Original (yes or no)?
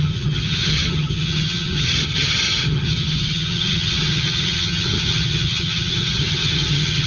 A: no